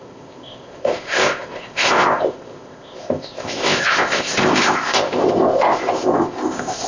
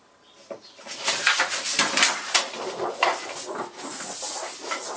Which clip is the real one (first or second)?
second